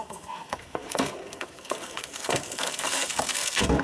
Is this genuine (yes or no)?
no